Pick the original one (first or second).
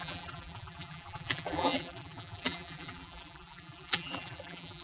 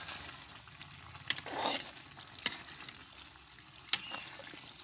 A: second